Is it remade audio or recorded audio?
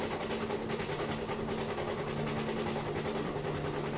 recorded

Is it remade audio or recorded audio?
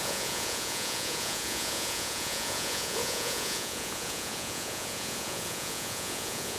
remade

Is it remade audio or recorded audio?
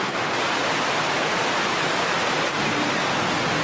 recorded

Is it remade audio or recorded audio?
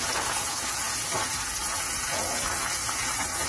remade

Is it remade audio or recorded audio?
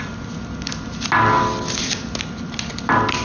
recorded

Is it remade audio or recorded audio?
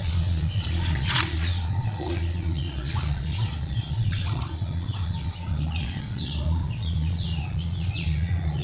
remade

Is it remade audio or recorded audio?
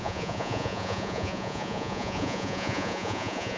remade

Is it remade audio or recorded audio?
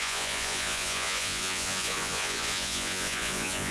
remade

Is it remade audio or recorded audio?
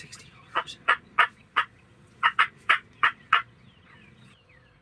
remade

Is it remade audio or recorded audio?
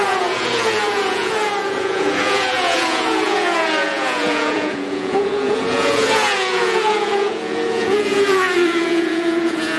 remade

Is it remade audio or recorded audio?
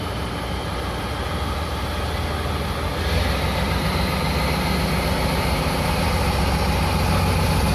recorded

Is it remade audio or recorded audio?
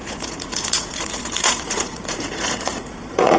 remade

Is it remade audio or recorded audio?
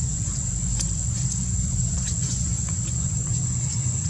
remade